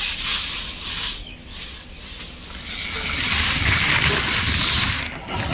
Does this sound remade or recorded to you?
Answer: recorded